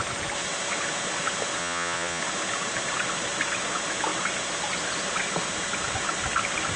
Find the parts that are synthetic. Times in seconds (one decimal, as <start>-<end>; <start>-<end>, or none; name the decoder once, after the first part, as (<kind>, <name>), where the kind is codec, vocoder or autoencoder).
1.6-2.2 (vocoder, Vocos)